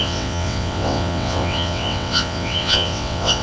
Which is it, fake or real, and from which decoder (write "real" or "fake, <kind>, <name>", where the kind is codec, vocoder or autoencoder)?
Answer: fake, vocoder, WaveNeXt